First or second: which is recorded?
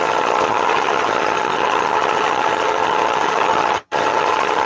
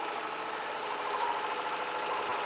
second